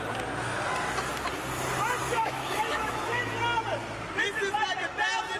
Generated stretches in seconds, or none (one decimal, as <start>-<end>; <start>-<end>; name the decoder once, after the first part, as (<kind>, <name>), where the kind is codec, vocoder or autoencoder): 2.0-3.2 (autoencoder, DAC-VAE)